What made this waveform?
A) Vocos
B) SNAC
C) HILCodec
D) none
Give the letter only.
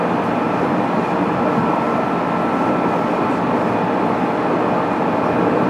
D